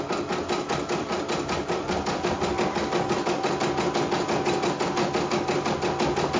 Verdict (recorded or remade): recorded